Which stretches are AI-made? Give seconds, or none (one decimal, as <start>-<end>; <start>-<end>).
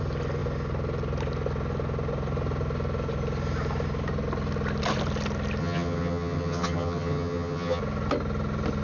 5.6-7.8